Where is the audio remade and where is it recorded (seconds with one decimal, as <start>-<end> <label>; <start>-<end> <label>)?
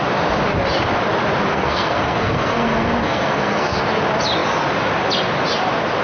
0.0-1.5 recorded; 1.5-3.8 remade; 3.8-6.0 recorded